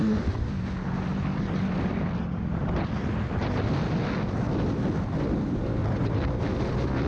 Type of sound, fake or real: real